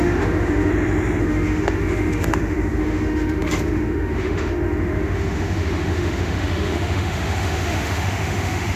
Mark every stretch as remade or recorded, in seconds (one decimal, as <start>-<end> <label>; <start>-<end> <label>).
0.0-0.7 remade; 0.7-1.2 recorded; 1.2-8.8 remade